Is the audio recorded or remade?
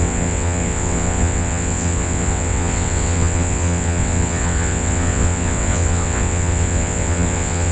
remade